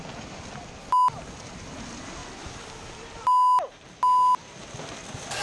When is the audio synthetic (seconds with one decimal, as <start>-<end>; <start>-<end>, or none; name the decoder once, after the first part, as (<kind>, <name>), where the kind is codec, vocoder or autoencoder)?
none